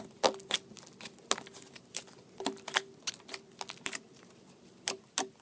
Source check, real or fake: real